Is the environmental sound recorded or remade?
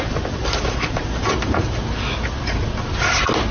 recorded